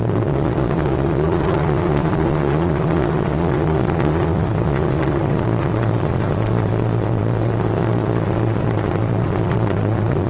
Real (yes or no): no